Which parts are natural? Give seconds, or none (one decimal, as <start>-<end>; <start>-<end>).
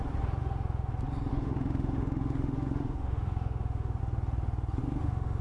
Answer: 0.0-0.4; 0.9-1.3; 4.0-4.8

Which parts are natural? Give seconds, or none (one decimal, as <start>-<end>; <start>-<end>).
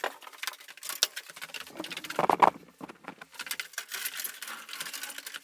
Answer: 0.0-5.4